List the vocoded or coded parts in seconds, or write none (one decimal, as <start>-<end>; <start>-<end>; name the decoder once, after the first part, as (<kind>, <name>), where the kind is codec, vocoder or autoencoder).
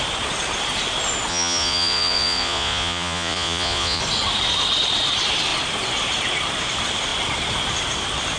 1.3-4.0 (vocoder, Vocos)